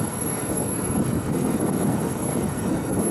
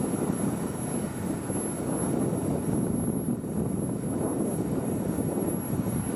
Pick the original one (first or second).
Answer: second